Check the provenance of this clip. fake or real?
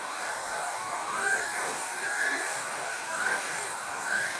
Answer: fake